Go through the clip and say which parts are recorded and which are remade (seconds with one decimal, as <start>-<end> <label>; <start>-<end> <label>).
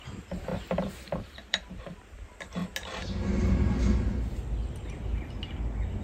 0.0-0.5 recorded; 0.5-2.0 remade; 2.0-6.0 recorded